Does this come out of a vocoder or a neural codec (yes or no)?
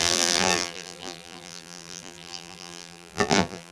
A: yes